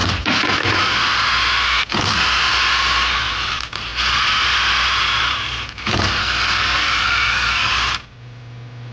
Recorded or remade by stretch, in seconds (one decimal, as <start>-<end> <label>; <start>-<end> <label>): 0.0-6.2 recorded; 6.2-7.7 remade; 7.7-8.9 recorded